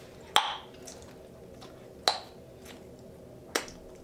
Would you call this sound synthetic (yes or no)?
no